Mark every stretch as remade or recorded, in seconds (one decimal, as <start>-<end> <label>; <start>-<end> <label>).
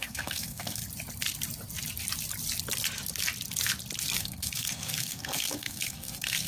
0.0-0.8 remade; 0.8-4.2 recorded; 4.2-6.5 remade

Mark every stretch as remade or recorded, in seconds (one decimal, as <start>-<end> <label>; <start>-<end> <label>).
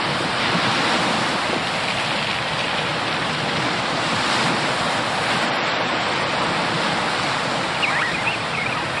0.0-2.9 recorded; 2.9-6.6 remade; 6.6-9.0 recorded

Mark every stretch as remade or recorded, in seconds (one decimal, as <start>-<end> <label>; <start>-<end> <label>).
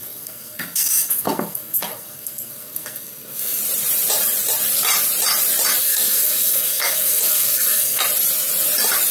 0.0-3.6 remade; 3.6-5.8 recorded; 5.8-8.0 remade; 8.0-9.1 recorded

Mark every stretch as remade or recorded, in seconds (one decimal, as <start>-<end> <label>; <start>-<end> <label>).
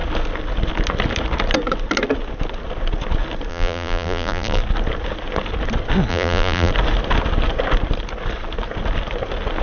0.0-3.5 recorded; 3.5-4.6 remade; 4.6-6.1 recorded; 6.1-6.7 remade; 6.7-9.6 recorded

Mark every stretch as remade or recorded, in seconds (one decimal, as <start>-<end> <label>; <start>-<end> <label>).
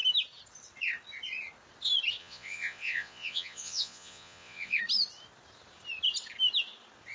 0.0-2.2 recorded; 2.2-4.8 remade; 4.8-7.1 recorded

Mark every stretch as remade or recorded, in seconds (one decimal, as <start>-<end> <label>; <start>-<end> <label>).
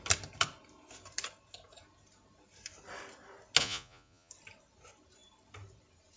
0.0-3.6 recorded; 3.6-4.3 remade; 4.3-6.2 recorded